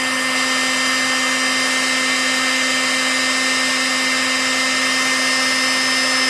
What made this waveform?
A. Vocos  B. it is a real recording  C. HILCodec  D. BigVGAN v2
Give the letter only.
B